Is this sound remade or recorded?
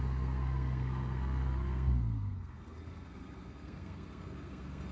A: remade